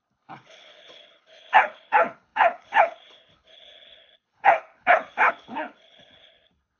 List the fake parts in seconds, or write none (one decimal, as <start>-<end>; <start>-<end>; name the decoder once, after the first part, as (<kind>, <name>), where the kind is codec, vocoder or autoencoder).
0.0-6.8 (codec, HILCodec)